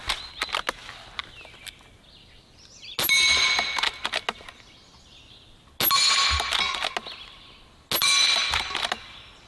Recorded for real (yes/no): yes